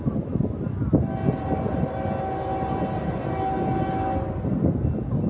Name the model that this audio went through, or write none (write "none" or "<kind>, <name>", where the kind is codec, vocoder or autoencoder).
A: none